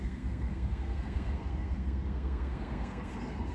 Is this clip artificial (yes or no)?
yes